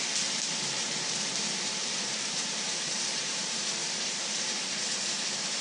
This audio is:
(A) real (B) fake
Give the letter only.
B